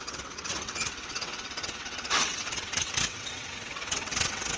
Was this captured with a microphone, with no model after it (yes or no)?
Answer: no